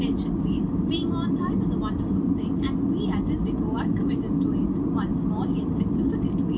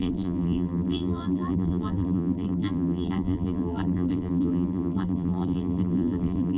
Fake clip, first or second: second